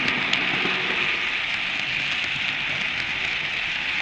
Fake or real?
real